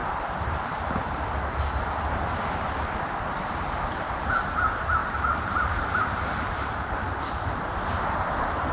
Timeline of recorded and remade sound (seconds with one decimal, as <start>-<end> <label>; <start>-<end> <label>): 0.0-4.1 remade; 4.1-5.0 recorded; 5.0-8.7 remade